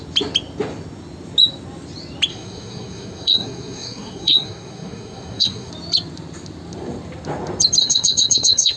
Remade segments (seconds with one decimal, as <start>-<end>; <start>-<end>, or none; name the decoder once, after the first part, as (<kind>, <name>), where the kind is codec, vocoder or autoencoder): 2.3-5.7 (codec, SNAC); 7.8-8.8